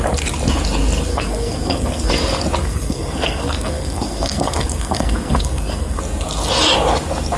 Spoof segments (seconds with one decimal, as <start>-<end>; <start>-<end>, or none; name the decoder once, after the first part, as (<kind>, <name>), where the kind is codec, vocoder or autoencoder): 1.1-2.1 (codec, SNAC); 2.6-6.0